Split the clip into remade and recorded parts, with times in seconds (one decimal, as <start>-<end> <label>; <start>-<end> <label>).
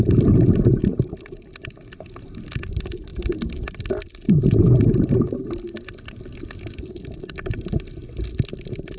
0.0-9.0 recorded